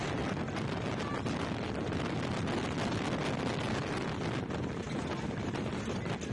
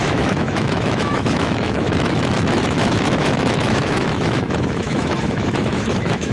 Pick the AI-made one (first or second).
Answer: second